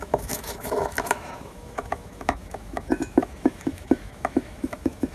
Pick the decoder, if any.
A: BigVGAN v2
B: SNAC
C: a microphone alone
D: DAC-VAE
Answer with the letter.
D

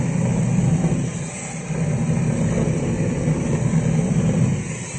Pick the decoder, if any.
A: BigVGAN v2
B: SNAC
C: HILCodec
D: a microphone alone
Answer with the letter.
D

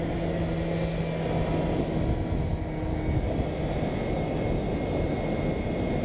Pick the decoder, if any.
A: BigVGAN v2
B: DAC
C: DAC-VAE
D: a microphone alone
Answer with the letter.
D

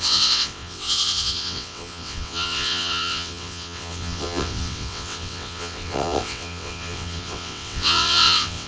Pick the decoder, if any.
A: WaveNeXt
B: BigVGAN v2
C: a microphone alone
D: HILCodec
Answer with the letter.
A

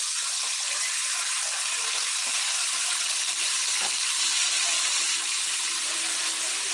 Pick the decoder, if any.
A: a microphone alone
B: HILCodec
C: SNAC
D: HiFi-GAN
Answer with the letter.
A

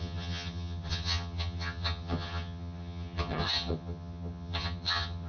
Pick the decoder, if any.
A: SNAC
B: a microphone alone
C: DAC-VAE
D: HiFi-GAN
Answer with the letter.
D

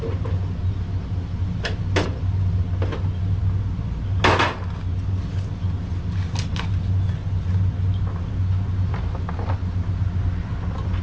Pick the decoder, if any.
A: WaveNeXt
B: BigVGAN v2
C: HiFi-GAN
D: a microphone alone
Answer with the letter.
D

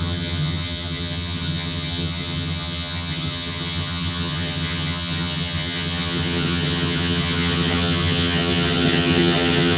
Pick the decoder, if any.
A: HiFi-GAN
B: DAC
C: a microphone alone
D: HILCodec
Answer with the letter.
A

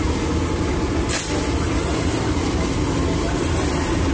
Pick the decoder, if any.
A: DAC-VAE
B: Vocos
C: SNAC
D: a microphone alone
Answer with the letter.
D